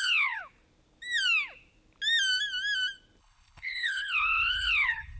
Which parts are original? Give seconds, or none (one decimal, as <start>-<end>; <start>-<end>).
0.4-3.2